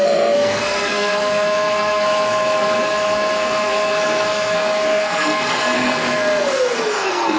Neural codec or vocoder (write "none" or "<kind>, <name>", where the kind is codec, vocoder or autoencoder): codec, SNAC